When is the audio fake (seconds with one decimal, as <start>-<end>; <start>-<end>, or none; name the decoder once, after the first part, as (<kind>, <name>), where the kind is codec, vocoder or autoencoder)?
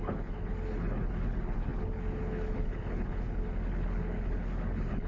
0.0-5.1 (codec, HILCodec)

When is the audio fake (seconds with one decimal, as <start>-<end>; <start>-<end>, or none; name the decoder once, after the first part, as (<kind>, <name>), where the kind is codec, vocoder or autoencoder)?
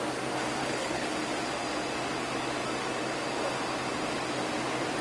0.6-1.1 (codec, HILCodec)